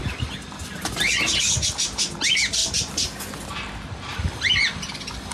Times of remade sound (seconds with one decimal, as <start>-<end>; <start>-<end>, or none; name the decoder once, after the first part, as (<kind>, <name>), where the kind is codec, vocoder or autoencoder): none